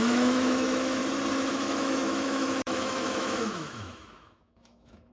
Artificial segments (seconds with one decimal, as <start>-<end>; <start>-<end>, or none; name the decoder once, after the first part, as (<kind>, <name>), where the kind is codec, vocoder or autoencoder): 0.0-1.0 (autoencoder, DAC-VAE); 1.5-5.1